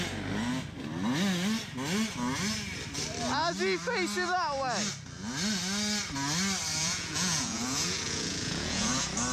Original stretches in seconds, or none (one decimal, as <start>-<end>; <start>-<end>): 0.0-6.7; 8.9-9.3